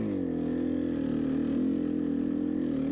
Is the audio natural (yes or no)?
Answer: yes